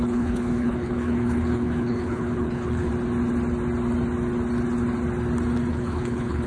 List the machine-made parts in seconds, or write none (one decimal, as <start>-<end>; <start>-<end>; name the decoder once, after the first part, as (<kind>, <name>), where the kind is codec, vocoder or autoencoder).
0.0-2.9 (codec, HILCodec); 5.7-6.5